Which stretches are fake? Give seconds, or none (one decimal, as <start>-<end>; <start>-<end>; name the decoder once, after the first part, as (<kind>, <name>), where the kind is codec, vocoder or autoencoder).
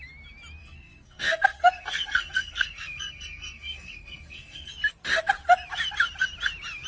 0.6-4.7 (codec, SNAC)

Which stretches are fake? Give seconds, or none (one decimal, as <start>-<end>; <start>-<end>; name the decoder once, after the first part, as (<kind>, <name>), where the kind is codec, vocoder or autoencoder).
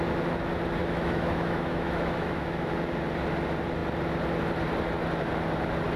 0.8-2.7 (autoencoder, DAC-VAE)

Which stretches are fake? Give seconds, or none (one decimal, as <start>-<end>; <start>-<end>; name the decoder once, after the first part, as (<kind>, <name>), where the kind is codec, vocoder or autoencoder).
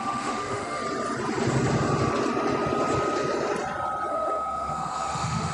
0.0-0.8 (autoencoder, DAC-VAE); 4.1-5.5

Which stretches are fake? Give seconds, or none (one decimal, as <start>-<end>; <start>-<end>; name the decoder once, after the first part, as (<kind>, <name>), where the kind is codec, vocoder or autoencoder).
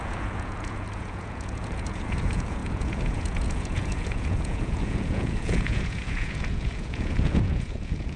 0.0-8.2 (vocoder, Vocos)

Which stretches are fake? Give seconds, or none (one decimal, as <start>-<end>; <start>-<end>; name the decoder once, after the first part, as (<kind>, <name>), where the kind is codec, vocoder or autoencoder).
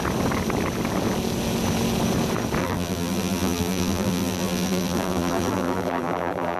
2.6-6.6 (vocoder, BigVGAN v2)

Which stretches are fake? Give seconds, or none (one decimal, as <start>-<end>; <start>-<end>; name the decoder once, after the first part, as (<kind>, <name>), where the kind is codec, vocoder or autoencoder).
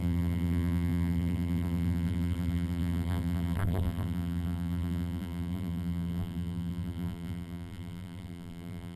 0.0-9.0 (vocoder, BigVGAN v2)